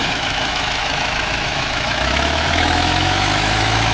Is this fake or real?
fake